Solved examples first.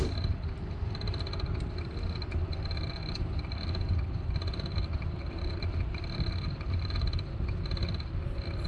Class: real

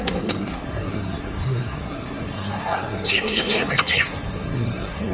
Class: fake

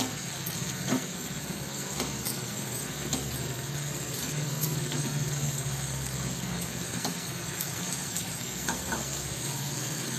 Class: fake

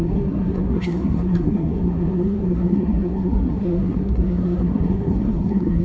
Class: fake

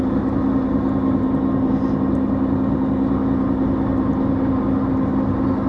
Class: real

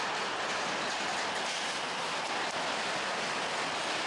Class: real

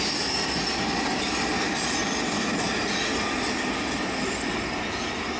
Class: real